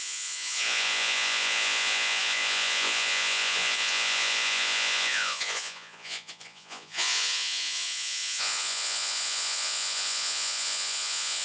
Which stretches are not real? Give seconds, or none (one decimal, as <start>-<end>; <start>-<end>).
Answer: 0.0-11.4